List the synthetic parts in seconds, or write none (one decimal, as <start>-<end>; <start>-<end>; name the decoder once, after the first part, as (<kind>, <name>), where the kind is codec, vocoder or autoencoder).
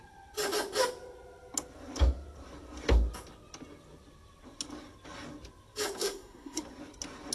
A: 6.0-6.6 (codec, SNAC)